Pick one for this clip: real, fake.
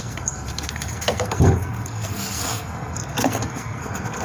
fake